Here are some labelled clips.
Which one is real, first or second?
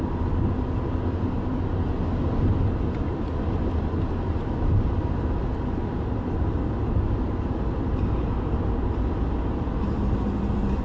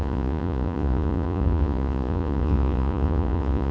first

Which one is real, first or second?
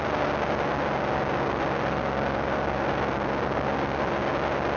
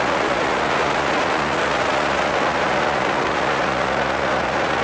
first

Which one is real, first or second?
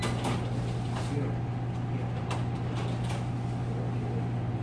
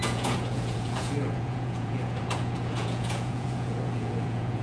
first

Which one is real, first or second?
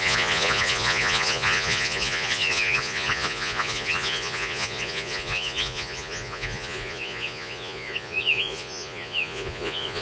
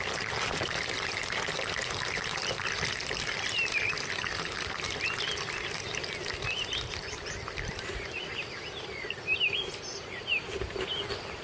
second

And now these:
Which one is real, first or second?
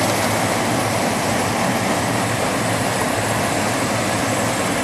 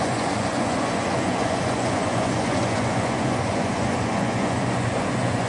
first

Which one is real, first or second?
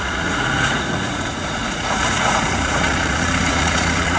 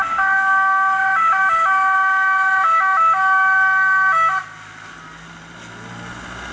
second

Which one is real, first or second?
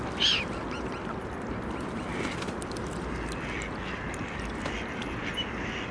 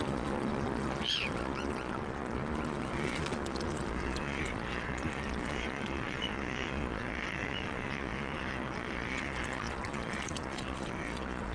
first